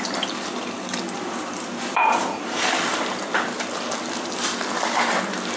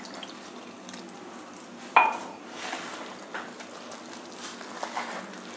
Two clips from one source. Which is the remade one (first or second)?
first